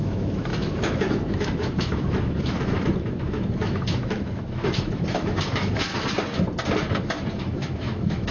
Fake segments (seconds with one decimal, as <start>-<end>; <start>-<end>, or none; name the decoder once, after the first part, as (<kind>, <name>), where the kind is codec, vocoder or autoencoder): 0.0-5.9 (autoencoder, DAC-VAE); 7.3-8.3

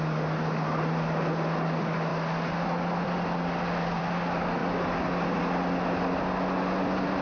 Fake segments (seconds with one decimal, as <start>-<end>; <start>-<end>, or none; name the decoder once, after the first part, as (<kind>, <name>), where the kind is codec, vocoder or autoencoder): 4.6-5.4 (vocoder, BigVGAN v2)